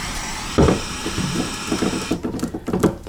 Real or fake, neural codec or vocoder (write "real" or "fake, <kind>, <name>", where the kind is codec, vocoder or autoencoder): fake, vocoder, BigVGAN v2